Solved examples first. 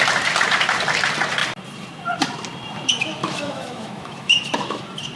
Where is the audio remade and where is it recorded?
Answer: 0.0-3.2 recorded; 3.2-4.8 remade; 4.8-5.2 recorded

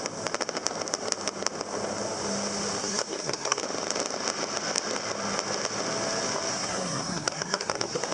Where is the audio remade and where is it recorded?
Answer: 0.0-2.8 recorded; 2.8-3.6 remade; 3.6-6.5 recorded; 6.5-8.1 remade

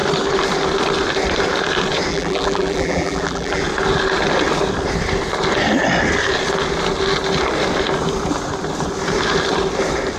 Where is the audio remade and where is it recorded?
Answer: 0.0-2.1 recorded; 2.1-3.6 remade; 3.6-10.2 recorded

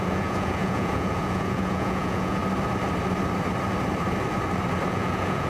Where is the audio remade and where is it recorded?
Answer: 0.0-2.4 remade; 2.4-4.9 recorded; 4.9-5.5 remade

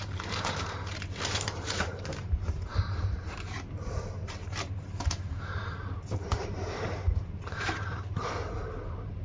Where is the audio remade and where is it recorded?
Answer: 0.0-9.2 remade

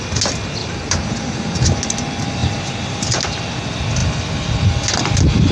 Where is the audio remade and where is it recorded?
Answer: 0.0-0.6 recorded; 0.6-1.8 remade; 1.8-2.4 recorded; 2.4-3.2 remade; 3.2-5.5 recorded

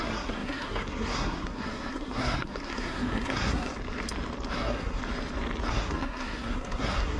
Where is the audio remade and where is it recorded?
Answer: 0.0-3.7 remade; 3.7-4.5 recorded; 4.5-5.0 remade; 5.0-5.7 recorded; 5.7-7.2 remade

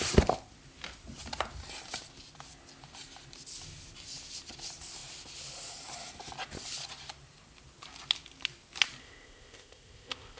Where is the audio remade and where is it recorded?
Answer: 0.0-9.0 recorded; 9.0-10.4 remade